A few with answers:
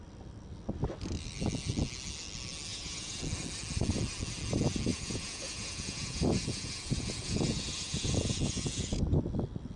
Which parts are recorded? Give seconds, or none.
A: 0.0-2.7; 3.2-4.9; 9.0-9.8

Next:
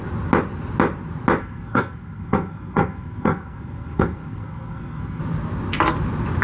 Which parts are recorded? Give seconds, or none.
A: 0.0-1.4; 5.2-6.4